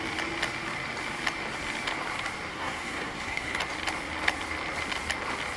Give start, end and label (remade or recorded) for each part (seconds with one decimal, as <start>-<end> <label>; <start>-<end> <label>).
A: 0.0-2.5 recorded; 2.5-3.6 remade; 3.6-5.6 recorded